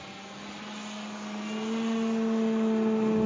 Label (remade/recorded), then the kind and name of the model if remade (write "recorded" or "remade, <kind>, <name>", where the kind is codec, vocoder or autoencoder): recorded